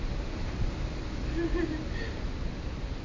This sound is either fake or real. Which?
real